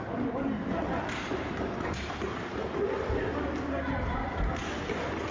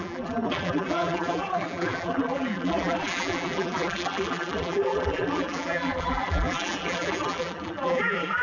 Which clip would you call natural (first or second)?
first